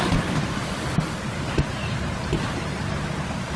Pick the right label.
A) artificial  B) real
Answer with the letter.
B